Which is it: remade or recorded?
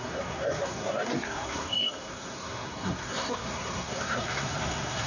remade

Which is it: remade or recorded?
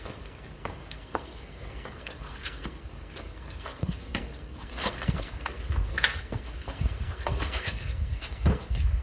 remade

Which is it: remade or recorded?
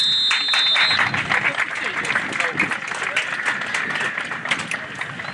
recorded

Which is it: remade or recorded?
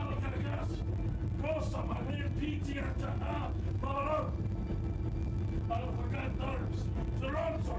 recorded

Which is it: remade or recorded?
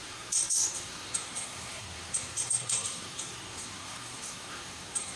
remade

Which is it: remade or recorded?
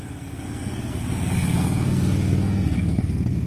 remade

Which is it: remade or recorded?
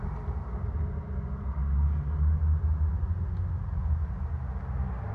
recorded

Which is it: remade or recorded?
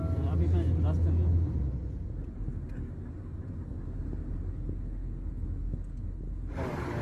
recorded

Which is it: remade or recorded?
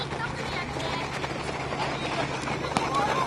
recorded